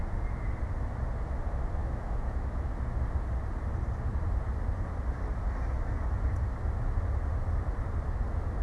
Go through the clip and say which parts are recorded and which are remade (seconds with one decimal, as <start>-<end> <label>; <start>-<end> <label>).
0.0-1.8 recorded; 1.8-2.7 remade; 2.7-8.6 recorded